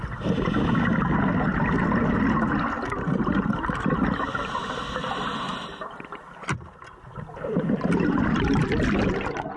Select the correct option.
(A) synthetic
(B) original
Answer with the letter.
B